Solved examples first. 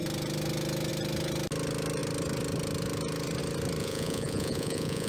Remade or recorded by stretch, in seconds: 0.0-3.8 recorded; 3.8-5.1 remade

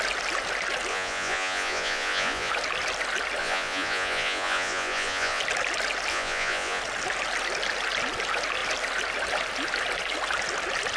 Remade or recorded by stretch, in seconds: 0.0-0.9 recorded; 0.9-2.5 remade; 2.5-3.4 recorded; 3.4-5.4 remade; 5.4-6.1 recorded; 6.1-6.8 remade; 6.8-11.0 recorded

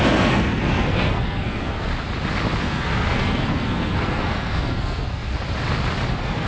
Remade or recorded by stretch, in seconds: 0.0-1.9 remade; 1.9-2.6 recorded; 2.6-5.3 remade; 5.3-6.1 recorded; 6.1-6.5 remade

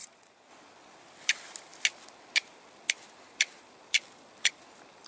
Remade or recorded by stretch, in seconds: 0.0-0.5 remade; 0.5-5.1 recorded

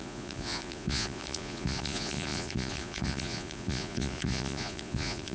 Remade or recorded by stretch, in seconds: 0.0-5.3 remade